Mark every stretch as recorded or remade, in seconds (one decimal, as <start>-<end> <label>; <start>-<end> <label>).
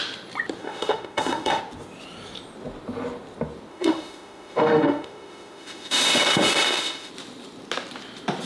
0.0-0.6 recorded; 0.6-1.6 remade; 1.6-3.7 recorded; 3.7-7.1 remade; 7.1-8.5 recorded